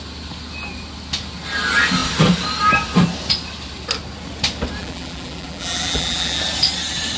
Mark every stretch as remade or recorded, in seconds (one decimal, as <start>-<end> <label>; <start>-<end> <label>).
0.0-4.8 recorded; 4.8-6.4 remade; 6.4-7.2 recorded